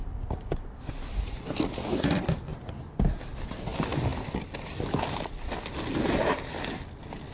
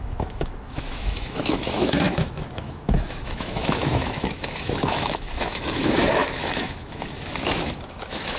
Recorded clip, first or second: first